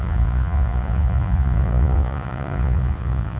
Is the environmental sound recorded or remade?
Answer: remade